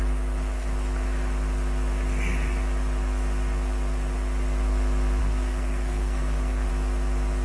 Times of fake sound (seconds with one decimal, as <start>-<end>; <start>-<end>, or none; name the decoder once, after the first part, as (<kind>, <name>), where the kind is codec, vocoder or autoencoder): 5.2-6.7 (codec, SNAC)